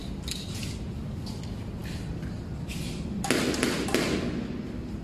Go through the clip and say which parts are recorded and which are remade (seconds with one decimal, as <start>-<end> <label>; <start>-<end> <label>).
0.0-5.0 recorded